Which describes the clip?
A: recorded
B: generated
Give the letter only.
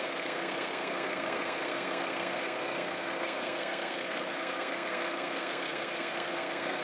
B